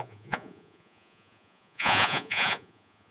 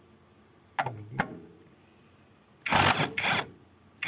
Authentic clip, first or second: second